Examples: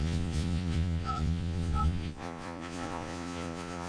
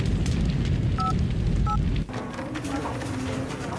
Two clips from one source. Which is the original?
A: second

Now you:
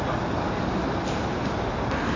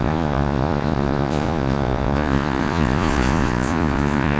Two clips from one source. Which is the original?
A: first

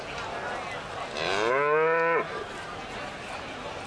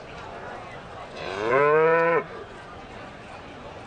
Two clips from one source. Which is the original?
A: first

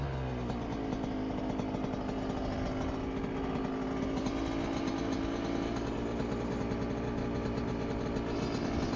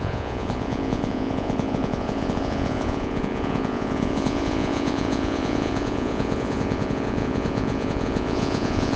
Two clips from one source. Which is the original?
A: first